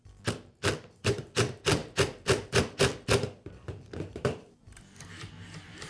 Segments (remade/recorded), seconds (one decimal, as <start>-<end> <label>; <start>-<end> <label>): 0.0-5.9 remade